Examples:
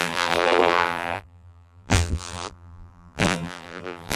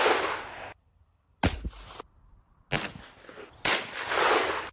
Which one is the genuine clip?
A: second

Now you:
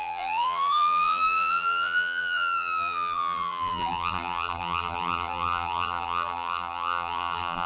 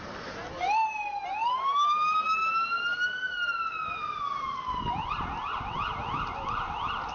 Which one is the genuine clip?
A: second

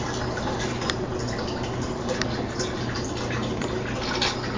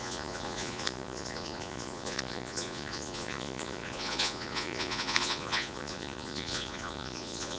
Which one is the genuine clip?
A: first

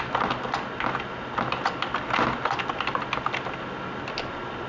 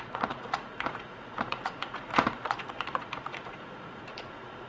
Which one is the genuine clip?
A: first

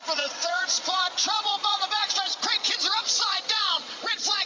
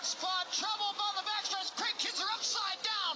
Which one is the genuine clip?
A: second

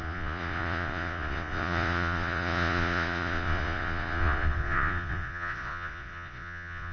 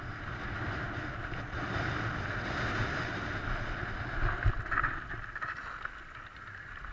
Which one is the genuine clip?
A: second